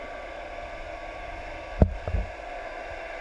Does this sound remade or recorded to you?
recorded